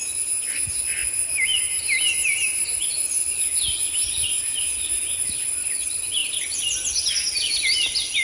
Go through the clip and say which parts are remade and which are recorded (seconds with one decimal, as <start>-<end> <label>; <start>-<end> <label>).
0.0-8.2 recorded